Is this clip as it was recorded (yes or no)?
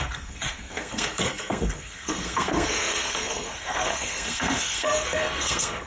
no